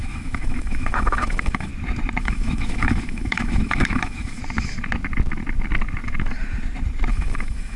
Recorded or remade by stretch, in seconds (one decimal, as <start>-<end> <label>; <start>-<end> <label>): 0.0-1.7 remade; 1.7-2.2 recorded; 2.2-4.4 remade; 4.4-7.1 recorded; 7.1-7.8 remade